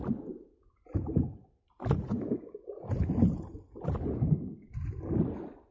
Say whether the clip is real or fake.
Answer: real